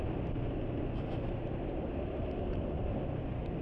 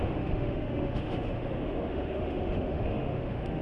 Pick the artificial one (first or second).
second